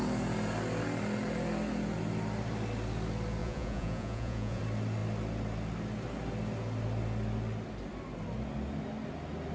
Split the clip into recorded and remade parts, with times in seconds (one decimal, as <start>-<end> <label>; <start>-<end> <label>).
0.0-3.4 recorded; 3.4-4.6 remade; 4.6-9.5 recorded